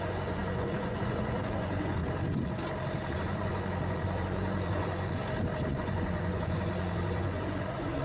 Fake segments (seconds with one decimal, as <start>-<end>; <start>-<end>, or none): 0.0-2.0; 3.1-5.2; 5.7-8.0